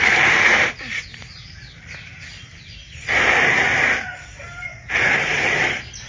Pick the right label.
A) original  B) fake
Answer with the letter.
A